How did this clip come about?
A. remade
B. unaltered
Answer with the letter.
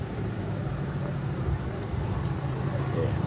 A